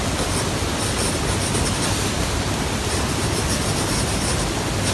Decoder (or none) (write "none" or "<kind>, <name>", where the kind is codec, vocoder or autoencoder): none